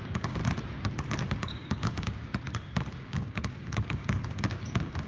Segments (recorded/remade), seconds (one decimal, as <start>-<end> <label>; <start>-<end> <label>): 0.0-0.4 remade; 0.4-1.4 recorded; 1.4-2.3 remade; 2.3-2.9 recorded; 2.9-5.1 remade